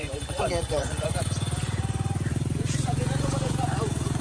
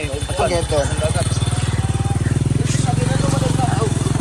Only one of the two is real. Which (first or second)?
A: second